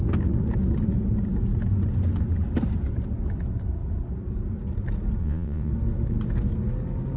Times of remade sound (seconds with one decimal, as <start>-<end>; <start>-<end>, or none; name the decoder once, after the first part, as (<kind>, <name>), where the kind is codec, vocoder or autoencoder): 5.2-5.7 (vocoder, WaveNeXt)